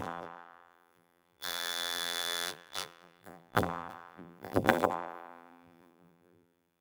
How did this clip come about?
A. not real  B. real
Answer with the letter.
A